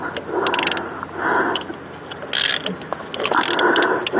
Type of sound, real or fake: real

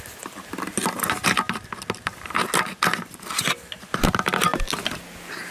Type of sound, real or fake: real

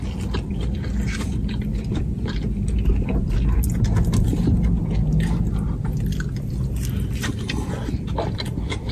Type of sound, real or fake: real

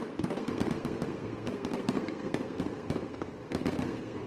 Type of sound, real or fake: fake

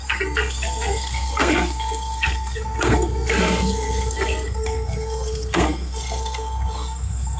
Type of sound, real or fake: fake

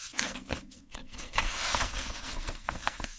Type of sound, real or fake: fake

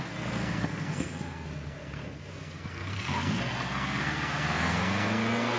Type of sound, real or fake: fake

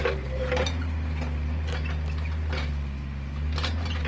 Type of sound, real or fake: real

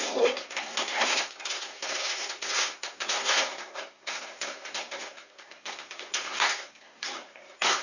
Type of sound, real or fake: fake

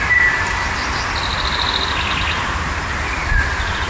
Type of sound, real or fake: real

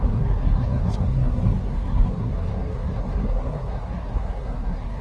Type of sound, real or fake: fake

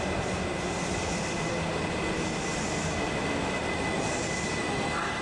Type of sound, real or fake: real